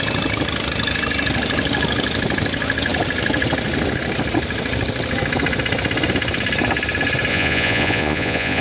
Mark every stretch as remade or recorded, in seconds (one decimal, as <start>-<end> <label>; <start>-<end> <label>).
0.0-7.3 recorded; 7.3-8.6 remade